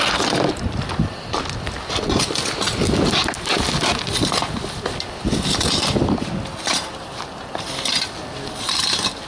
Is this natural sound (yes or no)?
yes